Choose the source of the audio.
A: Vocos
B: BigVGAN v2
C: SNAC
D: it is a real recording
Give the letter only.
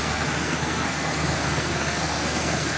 C